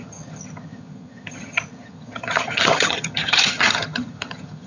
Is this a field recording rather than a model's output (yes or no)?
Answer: no